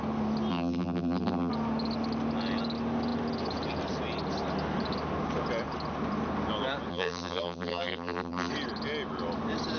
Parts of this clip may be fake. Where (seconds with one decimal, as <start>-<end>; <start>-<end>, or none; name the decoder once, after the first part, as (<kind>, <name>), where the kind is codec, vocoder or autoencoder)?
0.5-1.5 (vocoder, BigVGAN v2); 6.9-8.5